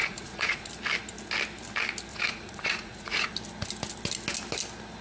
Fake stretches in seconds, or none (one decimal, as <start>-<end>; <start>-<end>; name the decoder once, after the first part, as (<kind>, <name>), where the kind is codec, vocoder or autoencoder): 0.0-0.7 (vocoder, Vocos); 2.1-3.3